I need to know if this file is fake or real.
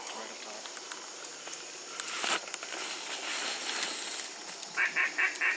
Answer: real